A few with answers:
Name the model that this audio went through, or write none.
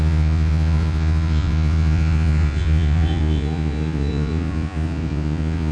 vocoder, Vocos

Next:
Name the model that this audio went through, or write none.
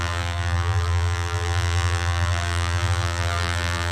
vocoder, BigVGAN v2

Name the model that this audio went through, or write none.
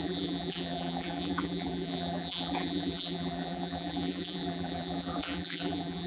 vocoder, BigVGAN v2